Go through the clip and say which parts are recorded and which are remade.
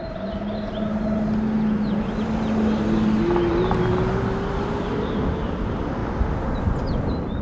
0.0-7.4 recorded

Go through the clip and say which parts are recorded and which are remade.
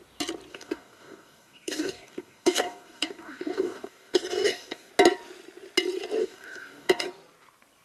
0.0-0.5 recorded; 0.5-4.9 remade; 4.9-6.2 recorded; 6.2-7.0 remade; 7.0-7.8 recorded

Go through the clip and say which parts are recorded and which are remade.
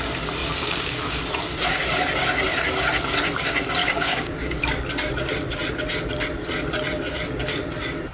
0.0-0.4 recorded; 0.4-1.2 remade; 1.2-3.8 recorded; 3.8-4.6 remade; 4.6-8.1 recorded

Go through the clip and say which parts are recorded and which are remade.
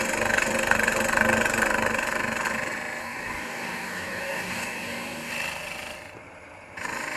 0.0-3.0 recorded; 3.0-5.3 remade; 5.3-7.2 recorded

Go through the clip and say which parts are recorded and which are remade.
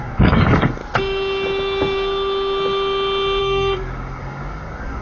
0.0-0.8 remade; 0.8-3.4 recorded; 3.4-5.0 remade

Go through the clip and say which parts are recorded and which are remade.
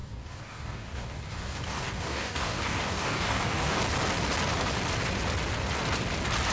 0.0-3.8 remade; 3.8-6.5 recorded